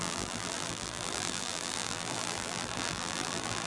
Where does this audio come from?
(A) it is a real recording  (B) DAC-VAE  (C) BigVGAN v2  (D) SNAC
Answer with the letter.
C